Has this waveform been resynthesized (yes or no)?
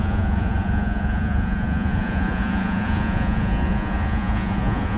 yes